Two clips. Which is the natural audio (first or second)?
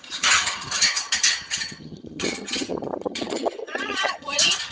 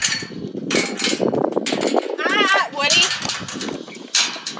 second